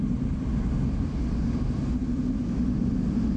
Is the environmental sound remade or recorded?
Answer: recorded